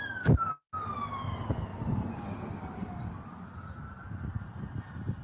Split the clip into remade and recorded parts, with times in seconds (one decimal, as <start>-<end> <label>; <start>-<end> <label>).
0.0-1.7 recorded; 1.7-4.8 remade; 4.8-5.2 recorded